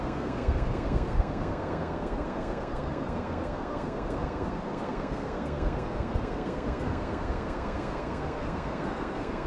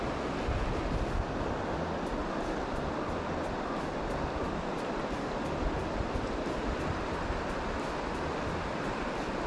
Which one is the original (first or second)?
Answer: second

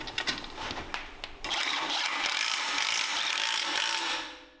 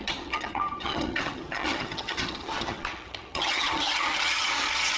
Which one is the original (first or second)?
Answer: first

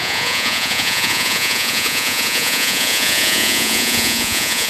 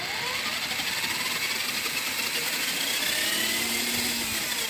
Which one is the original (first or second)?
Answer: second